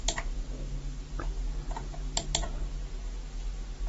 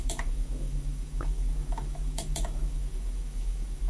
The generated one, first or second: second